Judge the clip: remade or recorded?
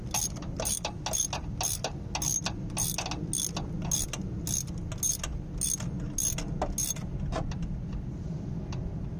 recorded